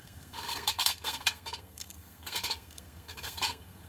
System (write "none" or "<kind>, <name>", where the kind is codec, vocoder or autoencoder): codec, SNAC